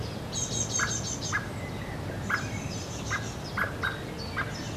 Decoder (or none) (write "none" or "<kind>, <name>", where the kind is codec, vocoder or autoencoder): none